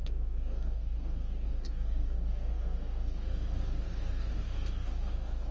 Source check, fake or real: fake